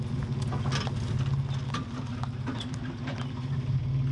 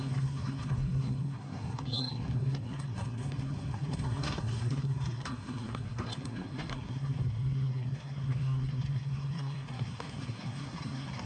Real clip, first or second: first